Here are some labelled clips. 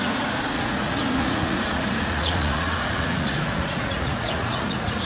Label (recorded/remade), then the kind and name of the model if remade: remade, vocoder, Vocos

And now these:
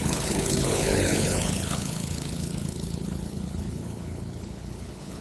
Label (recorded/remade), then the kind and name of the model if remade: remade, codec, HILCodec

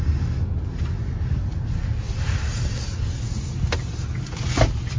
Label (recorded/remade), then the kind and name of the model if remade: recorded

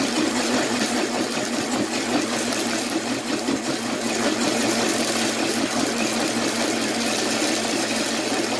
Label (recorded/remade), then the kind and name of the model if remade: recorded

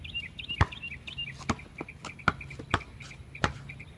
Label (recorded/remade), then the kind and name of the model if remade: recorded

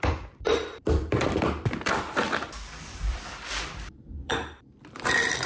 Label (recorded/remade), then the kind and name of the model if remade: remade, vocoder, BigVGAN v2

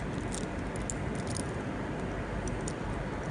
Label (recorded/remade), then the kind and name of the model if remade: recorded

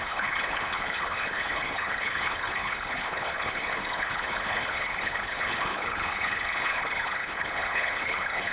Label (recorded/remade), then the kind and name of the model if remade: remade, codec, HILCodec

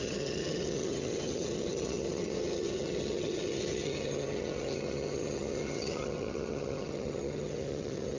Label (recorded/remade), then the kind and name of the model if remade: remade, vocoder, HiFi-GAN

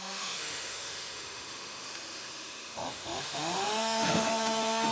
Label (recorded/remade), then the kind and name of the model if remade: remade, autoencoder, DAC-VAE